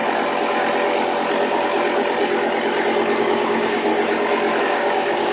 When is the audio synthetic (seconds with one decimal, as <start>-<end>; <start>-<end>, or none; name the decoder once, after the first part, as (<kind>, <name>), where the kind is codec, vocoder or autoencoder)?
3.2-3.9 (codec, DAC); 4.6-5.3